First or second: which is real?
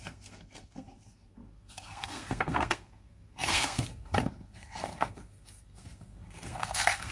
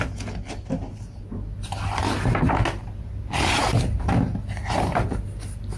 second